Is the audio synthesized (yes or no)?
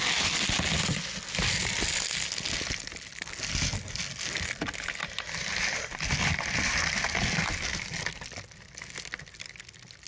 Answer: no